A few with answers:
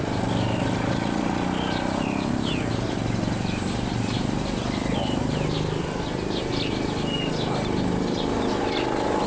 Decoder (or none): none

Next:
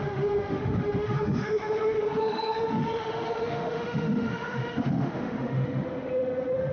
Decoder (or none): autoencoder, DAC-VAE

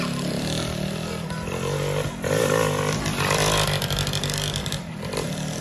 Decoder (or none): none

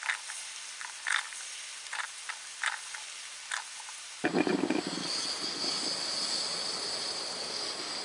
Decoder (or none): none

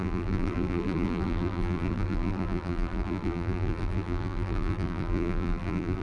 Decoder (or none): vocoder, BigVGAN v2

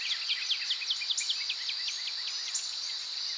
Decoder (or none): none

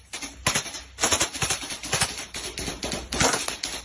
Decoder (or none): none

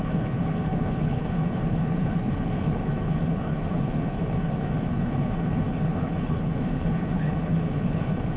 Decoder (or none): codec, HILCodec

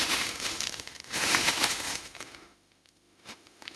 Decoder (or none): autoencoder, DAC-VAE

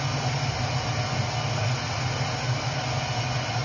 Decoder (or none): none